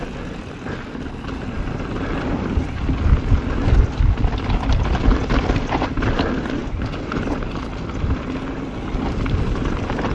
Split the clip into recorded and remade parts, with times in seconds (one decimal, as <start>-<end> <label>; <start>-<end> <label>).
0.0-10.1 recorded